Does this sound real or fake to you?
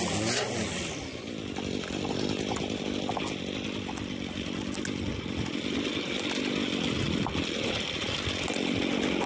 real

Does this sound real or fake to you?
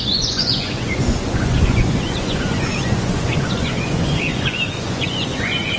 fake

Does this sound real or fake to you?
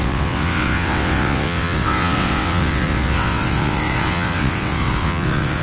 fake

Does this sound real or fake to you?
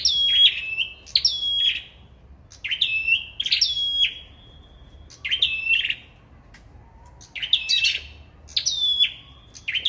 real